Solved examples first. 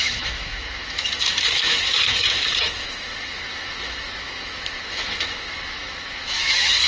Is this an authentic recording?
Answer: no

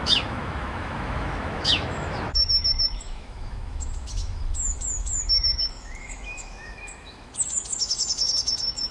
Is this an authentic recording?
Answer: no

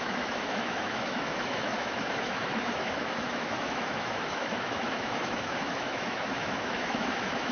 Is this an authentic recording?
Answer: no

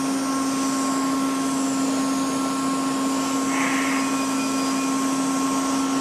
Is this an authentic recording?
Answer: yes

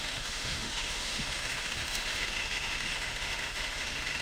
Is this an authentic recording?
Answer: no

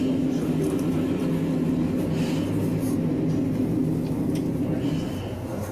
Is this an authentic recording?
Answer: yes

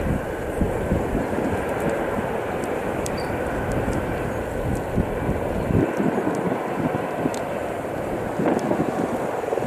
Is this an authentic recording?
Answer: yes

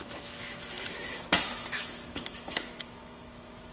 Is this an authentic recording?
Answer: no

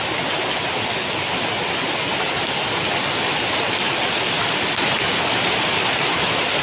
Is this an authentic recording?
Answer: yes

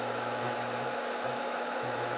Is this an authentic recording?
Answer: no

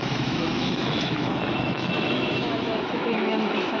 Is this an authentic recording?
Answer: no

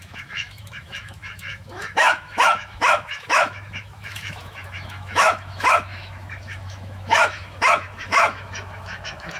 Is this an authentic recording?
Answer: no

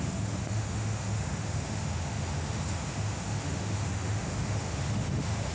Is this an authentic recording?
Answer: no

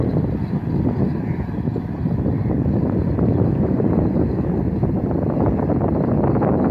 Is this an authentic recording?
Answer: yes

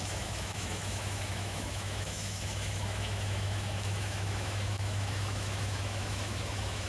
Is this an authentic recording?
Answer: no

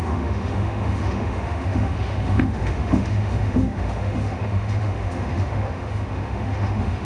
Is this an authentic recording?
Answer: no